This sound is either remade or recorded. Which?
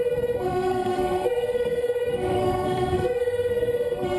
remade